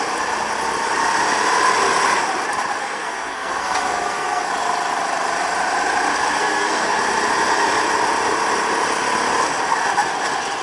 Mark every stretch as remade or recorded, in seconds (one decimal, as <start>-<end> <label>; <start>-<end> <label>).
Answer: 0.0-2.8 recorded; 2.8-4.5 remade; 4.5-6.4 recorded; 6.4-7.0 remade; 7.0-10.6 recorded